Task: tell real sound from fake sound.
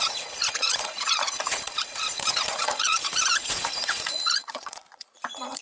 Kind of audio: fake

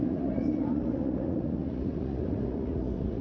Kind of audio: fake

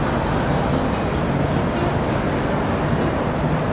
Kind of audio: real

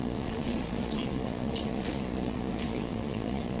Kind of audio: fake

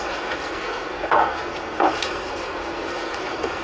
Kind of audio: fake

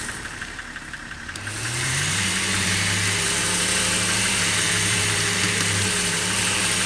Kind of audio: fake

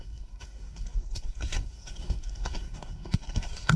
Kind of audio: fake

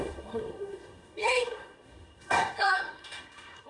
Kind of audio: fake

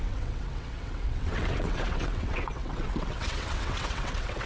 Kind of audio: fake